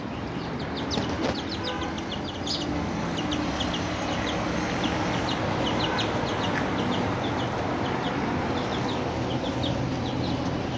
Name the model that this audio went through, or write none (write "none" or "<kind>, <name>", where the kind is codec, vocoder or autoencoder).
none